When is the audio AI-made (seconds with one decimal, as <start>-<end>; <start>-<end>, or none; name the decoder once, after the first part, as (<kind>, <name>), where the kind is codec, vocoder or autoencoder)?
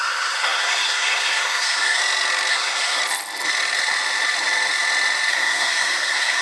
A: 0.0-2.0 (codec, SNAC); 2.5-3.0; 5.3-6.4